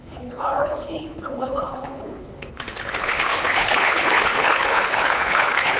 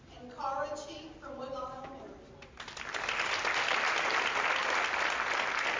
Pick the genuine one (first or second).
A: second